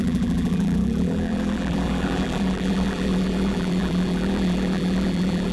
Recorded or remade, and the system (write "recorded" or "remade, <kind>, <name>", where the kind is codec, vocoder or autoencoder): remade, vocoder, BigVGAN v2